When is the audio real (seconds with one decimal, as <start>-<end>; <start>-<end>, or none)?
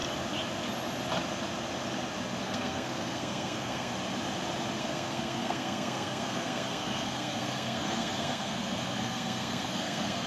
0.0-2.4; 3.9-4.8